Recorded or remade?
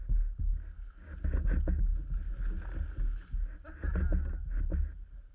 recorded